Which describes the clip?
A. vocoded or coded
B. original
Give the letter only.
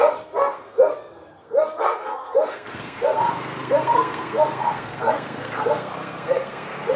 A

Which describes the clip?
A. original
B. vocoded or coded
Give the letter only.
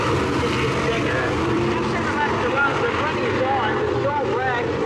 B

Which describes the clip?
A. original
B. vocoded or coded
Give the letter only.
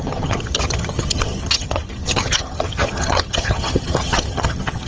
B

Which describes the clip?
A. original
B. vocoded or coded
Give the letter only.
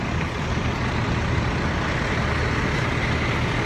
A